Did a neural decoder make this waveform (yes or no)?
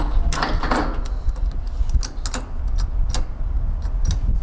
no